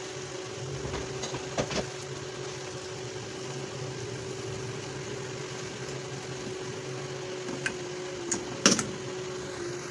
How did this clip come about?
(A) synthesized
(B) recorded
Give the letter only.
B